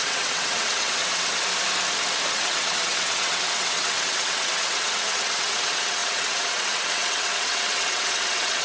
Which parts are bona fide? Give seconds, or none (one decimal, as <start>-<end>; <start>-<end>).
1.3-2.3